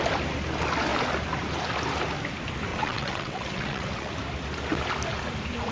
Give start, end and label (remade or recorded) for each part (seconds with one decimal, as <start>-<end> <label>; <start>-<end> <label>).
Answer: 0.0-2.7 recorded; 2.7-4.1 remade; 4.1-5.7 recorded